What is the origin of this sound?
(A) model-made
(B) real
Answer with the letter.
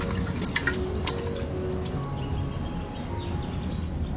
B